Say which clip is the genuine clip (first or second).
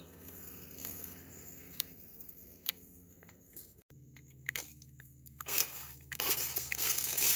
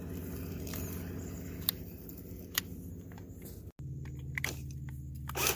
second